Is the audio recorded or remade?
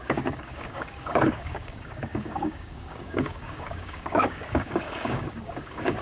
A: remade